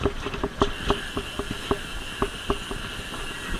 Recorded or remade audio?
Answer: recorded